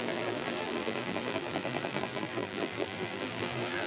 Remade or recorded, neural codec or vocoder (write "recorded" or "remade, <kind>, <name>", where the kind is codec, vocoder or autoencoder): remade, vocoder, BigVGAN v2